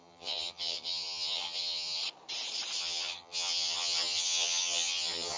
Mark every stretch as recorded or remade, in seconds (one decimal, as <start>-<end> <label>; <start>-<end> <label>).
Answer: 0.0-2.0 remade; 2.0-2.8 recorded; 2.8-5.4 remade